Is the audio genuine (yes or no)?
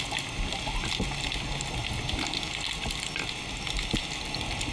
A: yes